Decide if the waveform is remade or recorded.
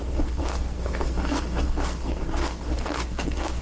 remade